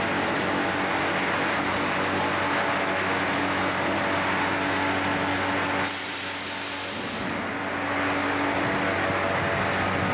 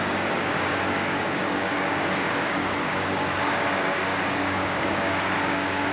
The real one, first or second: first